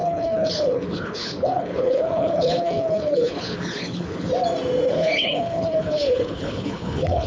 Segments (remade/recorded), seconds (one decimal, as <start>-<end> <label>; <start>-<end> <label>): 0.0-4.3 remade; 4.3-4.9 recorded; 4.9-7.3 remade